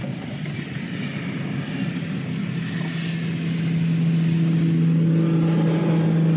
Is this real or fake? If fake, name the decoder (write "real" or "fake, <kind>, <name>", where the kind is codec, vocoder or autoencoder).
real